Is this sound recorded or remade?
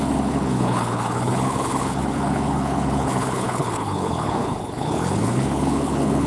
remade